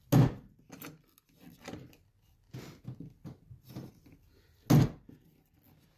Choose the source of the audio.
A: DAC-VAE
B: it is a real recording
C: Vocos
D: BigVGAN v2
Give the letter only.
B